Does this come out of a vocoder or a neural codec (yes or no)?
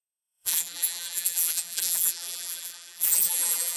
yes